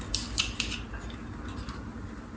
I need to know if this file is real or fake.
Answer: real